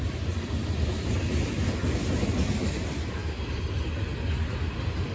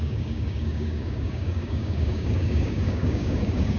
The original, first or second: first